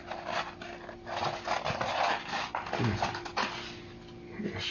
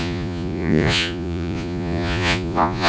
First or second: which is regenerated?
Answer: second